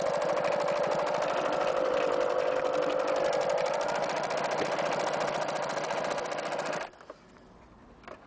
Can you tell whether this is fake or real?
real